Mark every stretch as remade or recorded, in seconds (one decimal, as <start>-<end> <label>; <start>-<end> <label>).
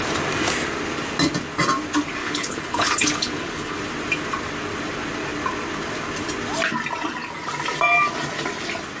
0.0-2.2 recorded; 2.2-3.8 remade; 3.8-9.0 recorded